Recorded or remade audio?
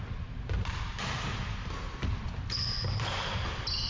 recorded